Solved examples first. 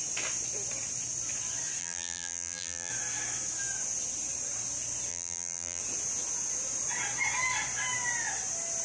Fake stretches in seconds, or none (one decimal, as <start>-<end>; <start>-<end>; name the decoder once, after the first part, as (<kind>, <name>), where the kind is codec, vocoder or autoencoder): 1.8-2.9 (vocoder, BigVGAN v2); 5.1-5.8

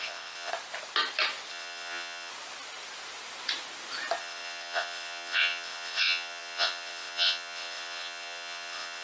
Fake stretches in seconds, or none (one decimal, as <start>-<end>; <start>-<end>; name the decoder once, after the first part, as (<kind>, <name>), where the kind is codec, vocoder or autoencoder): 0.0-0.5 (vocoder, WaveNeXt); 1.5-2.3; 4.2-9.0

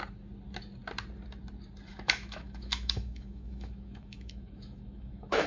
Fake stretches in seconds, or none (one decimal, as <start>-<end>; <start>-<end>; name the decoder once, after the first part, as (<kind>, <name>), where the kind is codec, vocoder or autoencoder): 1.9-5.5 (autoencoder, DAC-VAE)

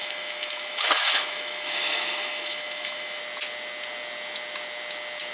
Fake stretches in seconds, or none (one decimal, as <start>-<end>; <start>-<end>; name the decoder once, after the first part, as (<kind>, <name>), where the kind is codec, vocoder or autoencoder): 0.0-3.2 (autoencoder, DAC-VAE)